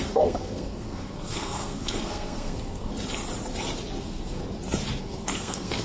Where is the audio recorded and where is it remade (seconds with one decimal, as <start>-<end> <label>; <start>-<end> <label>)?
0.0-2.9 remade; 2.9-4.0 recorded; 4.0-4.4 remade; 4.4-5.0 recorded; 5.0-5.8 remade